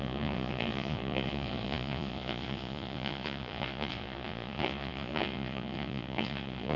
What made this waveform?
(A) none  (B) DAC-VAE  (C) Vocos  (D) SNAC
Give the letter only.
C